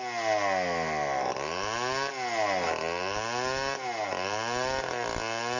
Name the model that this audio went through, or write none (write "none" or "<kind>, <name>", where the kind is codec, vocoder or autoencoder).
none